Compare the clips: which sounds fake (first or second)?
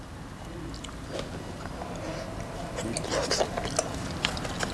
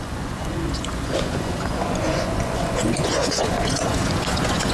second